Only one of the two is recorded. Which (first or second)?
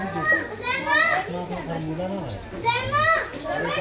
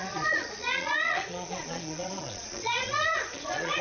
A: first